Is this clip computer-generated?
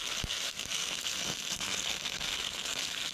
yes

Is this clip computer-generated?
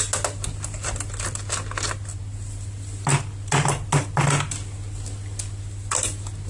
no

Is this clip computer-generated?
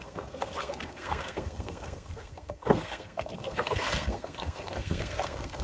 yes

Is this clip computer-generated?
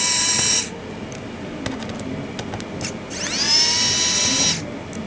no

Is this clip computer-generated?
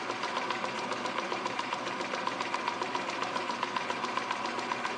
no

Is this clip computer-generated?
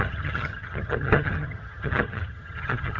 yes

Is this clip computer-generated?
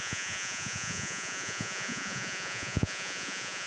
yes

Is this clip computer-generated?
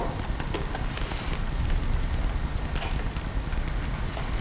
no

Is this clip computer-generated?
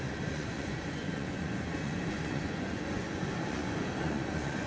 yes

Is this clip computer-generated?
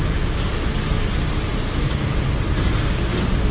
no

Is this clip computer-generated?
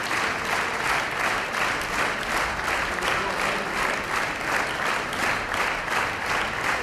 no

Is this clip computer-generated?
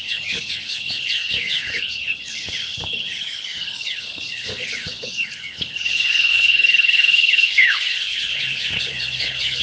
yes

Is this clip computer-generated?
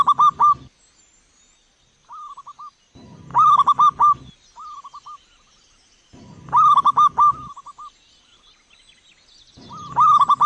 no